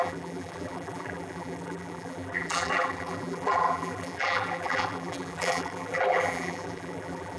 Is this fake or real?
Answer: fake